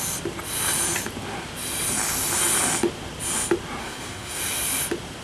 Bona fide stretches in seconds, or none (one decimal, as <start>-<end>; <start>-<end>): 0.0-3.8; 4.4-5.2